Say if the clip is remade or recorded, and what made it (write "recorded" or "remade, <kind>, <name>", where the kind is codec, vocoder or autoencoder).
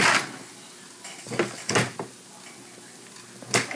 recorded